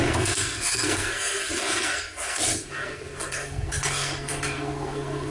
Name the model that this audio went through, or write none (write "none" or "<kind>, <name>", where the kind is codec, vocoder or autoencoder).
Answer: codec, SNAC